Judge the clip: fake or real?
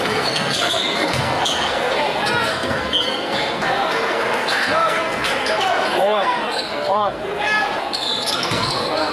fake